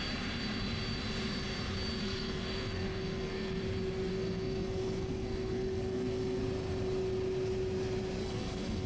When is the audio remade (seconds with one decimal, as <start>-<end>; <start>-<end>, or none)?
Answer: 2.0-3.6; 4.1-6.4; 8.2-8.9